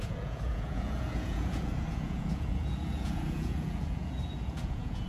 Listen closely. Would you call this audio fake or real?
fake